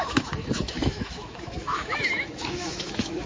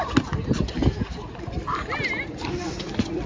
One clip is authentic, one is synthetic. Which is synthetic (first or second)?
first